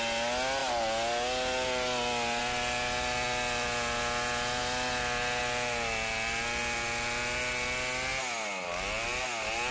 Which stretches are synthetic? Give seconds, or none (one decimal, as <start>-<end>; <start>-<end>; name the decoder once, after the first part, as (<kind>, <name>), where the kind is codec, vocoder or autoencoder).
none

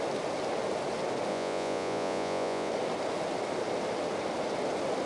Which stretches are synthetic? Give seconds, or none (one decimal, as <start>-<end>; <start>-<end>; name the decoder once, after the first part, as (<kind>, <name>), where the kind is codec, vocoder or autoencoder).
1.3-2.7 (vocoder, Vocos)

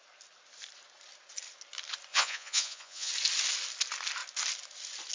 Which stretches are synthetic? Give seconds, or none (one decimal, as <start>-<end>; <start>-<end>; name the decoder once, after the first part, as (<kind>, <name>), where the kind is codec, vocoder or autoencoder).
2.1-3.1 (vocoder, Vocos)

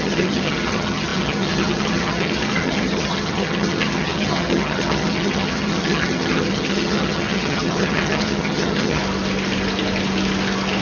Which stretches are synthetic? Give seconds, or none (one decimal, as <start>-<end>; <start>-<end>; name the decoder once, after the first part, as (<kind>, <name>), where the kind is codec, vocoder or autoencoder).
0.0-9.0 (vocoder, HiFi-GAN)

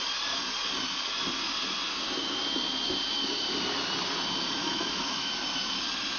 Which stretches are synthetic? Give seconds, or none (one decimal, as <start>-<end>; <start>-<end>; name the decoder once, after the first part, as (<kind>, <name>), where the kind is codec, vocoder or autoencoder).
4.6-5.3 (autoencoder, DAC-VAE)

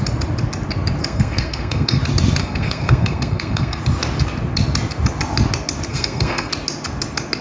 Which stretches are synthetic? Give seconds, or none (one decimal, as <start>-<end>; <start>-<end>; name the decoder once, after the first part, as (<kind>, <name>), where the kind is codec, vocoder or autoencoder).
1.0-2.0 (codec, SNAC); 2.4-3.8; 5.9-6.5

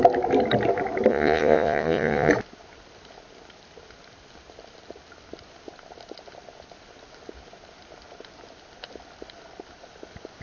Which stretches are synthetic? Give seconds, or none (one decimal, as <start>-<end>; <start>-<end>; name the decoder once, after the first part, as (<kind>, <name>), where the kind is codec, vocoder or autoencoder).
1.1-2.3 (vocoder, Vocos)

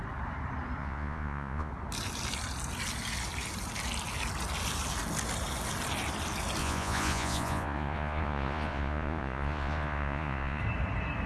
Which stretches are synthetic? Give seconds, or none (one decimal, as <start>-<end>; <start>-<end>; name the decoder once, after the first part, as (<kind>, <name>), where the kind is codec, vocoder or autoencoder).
0.8-1.7 (vocoder, Vocos); 6.6-10.6